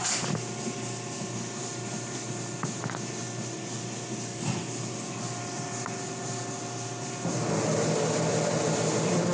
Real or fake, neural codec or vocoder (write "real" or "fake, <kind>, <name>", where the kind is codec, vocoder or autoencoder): real